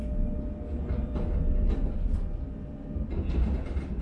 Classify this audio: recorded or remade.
recorded